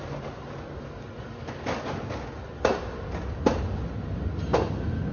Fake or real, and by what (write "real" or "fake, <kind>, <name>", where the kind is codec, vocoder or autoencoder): real